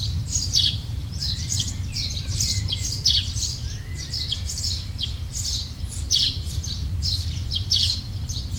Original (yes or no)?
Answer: no